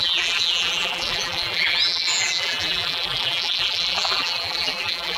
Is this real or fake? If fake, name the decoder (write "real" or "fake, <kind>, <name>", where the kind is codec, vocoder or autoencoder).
fake, vocoder, BigVGAN v2